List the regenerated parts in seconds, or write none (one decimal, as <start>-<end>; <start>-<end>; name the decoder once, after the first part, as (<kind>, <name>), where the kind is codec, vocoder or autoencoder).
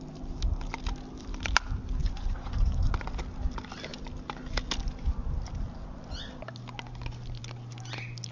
2.0-2.9 (vocoder, Vocos)